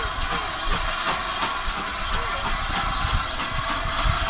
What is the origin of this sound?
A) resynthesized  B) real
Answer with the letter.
B